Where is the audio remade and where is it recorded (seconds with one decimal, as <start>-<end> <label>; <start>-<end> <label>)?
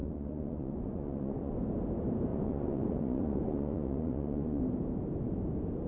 0.0-1.6 remade; 1.6-2.3 recorded; 2.3-4.6 remade; 4.6-5.9 recorded